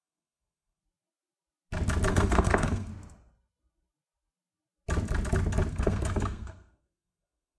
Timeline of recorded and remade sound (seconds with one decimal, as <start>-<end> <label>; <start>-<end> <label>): 0.0-0.8 remade; 0.8-2.1 recorded; 2.1-2.9 remade; 2.9-5.7 recorded; 5.7-7.6 remade